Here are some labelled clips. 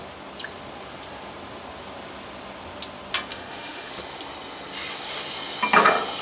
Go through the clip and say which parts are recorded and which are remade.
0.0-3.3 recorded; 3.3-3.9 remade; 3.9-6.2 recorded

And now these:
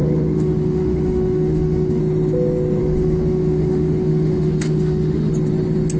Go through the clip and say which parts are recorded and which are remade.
0.0-2.0 remade; 2.0-2.8 recorded; 2.8-5.3 remade; 5.3-6.0 recorded